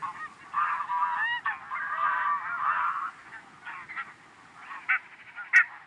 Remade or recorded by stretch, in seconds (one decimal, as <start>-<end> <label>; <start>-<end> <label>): 0.0-5.9 recorded